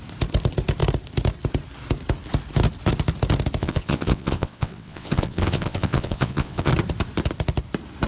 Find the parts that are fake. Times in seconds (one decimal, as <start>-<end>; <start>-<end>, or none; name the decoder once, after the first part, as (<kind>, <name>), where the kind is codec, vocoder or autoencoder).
3.6-6.7 (vocoder, WaveNeXt)